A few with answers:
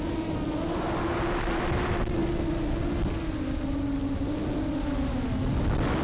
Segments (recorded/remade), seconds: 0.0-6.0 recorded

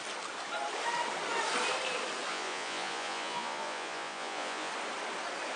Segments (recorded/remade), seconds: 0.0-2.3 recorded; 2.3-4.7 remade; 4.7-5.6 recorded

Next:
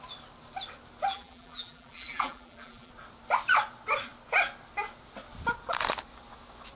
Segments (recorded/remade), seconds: 0.0-1.1 recorded; 1.1-2.9 remade; 2.9-6.8 recorded

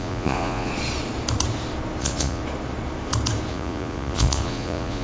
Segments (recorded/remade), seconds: 0.0-0.7 remade; 0.7-2.0 recorded; 2.0-2.4 remade; 2.4-3.5 recorded; 3.5-5.0 remade

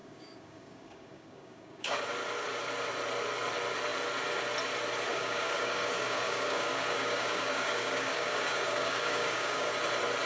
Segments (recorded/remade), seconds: 0.0-2.0 remade; 2.0-5.1 recorded; 5.1-9.8 remade; 9.8-10.3 recorded